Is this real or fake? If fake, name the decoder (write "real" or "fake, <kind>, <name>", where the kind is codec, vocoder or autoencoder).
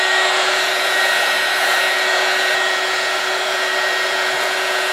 fake, vocoder, Vocos